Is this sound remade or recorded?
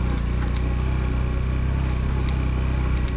recorded